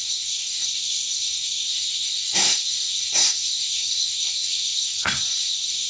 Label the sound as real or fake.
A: fake